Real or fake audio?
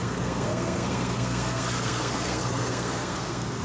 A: fake